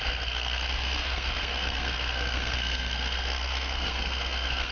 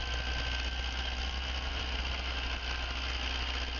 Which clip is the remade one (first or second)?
first